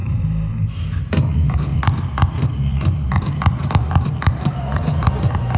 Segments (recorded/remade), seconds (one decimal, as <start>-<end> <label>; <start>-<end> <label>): 0.0-0.5 remade; 0.5-1.7 recorded; 1.7-5.1 remade; 5.1-5.6 recorded